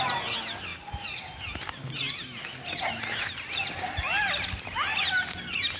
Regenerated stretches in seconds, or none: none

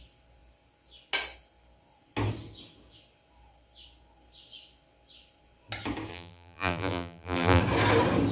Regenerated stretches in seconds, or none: 6.1-7.6 (vocoder, BigVGAN v2)

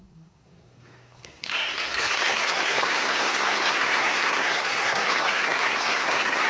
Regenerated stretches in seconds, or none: 0.0-6.5 (codec, SNAC)